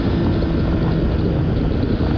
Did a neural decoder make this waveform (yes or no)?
no